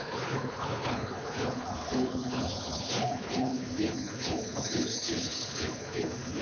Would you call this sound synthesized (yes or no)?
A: yes